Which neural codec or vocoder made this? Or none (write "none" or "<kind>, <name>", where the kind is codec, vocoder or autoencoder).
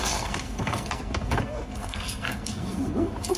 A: codec, SNAC